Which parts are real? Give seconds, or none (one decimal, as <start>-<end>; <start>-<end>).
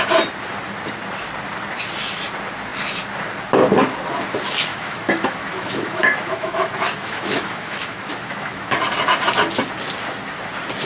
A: 0.0-4.7; 8.8-10.9